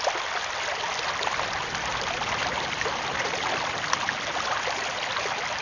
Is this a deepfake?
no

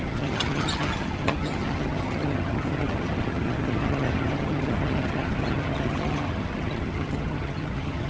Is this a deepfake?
yes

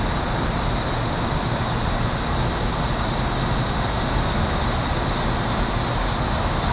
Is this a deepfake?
no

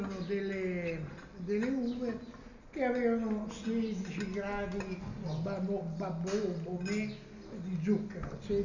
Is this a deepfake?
no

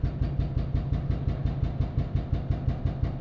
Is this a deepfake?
no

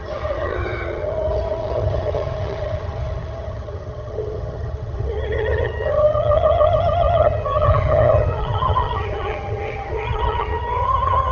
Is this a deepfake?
yes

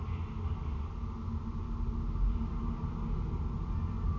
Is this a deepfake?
no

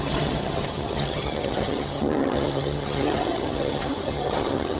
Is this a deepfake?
yes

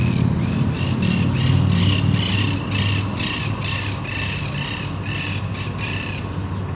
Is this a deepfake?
no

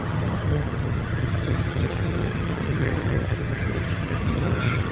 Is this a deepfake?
yes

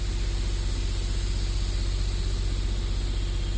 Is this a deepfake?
no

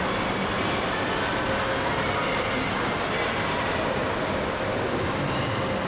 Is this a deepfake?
no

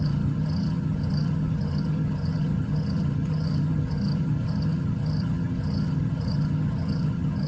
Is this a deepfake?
yes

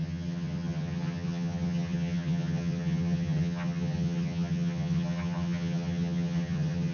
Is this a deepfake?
yes